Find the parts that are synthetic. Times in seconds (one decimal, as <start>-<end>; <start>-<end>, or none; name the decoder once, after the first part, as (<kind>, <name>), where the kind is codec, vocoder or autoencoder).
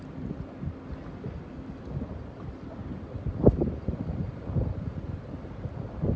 none